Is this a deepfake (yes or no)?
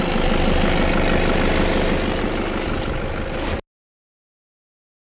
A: no